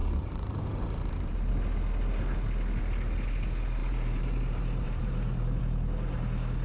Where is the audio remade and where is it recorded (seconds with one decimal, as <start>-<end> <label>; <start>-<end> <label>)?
0.0-1.5 remade; 1.5-3.8 recorded; 3.8-5.6 remade; 5.6-6.6 recorded